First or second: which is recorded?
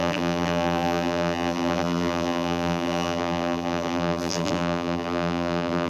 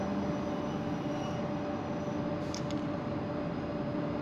second